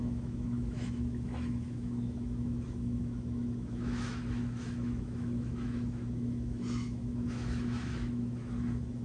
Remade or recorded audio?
remade